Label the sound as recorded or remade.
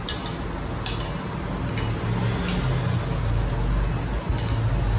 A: recorded